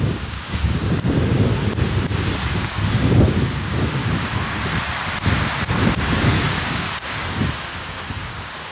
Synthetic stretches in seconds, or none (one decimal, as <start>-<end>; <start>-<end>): 0.0-1.5; 2.6-4.0; 6.0-8.7

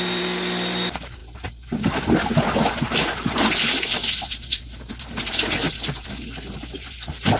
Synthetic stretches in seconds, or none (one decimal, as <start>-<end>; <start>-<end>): none

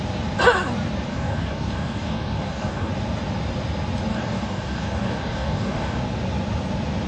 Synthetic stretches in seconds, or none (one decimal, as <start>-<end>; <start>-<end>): 1.1-2.9; 4.1-6.0

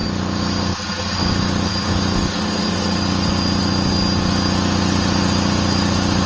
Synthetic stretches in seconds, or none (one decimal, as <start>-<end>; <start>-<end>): none

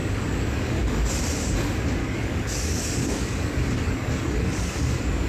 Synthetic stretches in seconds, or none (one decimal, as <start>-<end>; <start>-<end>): 0.0-1.2; 2.0-5.3

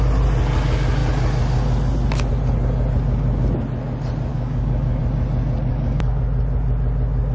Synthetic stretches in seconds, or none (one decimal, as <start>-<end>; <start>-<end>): 4.3-5.0; 5.7-6.2